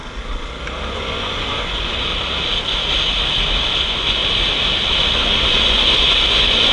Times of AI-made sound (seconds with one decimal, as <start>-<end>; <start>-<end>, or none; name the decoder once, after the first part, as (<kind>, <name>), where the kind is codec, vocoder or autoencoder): 0.9-2.1 (vocoder, Vocos); 3.8-4.2; 5.0-6.7